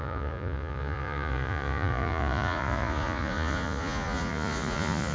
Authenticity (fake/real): fake